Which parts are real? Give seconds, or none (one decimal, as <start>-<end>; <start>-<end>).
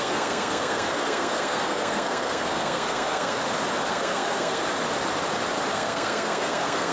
3.4-3.9; 4.6-5.7